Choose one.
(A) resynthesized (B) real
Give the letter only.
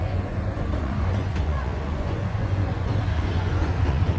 A